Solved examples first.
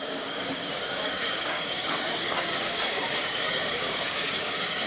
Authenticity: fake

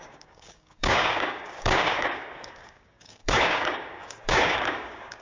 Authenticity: fake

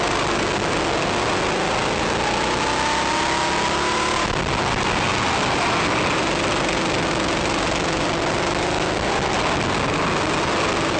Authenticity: real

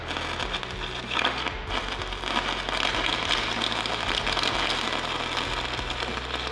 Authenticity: real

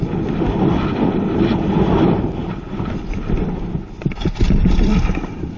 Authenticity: real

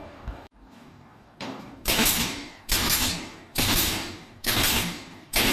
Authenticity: fake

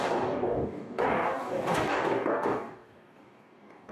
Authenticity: fake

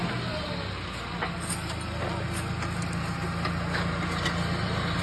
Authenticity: real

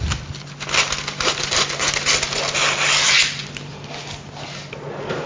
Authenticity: real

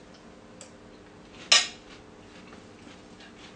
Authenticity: real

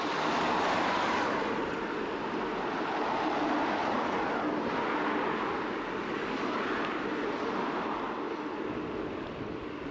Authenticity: real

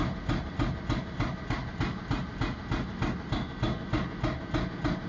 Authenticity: real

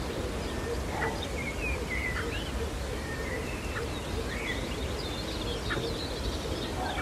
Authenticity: real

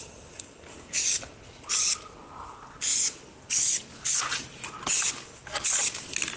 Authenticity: real